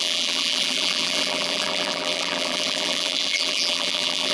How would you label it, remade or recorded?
remade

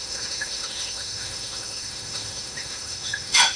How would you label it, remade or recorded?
remade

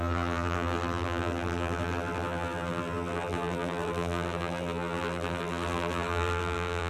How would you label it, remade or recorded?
remade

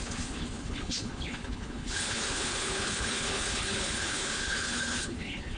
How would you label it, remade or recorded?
remade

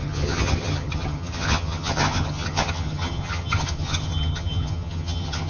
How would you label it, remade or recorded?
remade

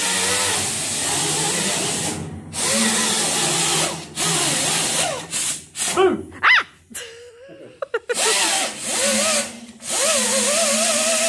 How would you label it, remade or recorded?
recorded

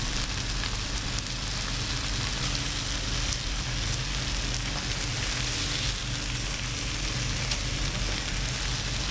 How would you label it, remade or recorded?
recorded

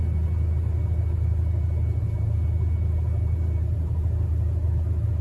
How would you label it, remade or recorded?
recorded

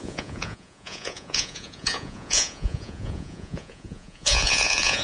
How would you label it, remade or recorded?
remade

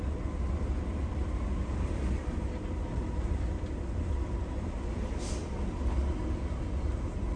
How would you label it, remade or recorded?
recorded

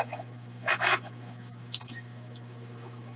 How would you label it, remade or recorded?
remade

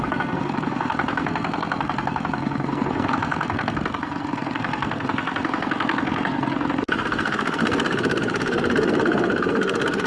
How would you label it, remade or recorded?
remade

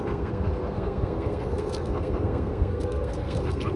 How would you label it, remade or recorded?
remade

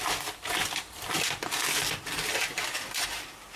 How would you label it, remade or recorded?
remade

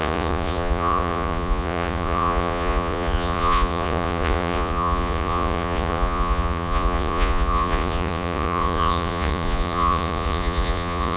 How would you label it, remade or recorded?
remade